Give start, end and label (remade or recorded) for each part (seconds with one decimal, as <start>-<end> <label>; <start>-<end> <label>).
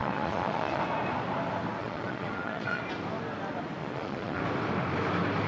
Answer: 0.0-0.8 remade; 0.8-1.8 recorded; 1.8-2.8 remade; 2.8-3.8 recorded; 3.8-4.4 remade; 4.4-5.5 recorded